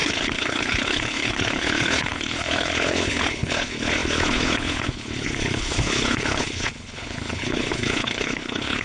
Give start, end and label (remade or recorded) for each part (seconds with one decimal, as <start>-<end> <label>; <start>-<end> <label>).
0.0-8.8 remade